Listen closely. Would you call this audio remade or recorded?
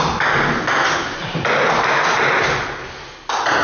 recorded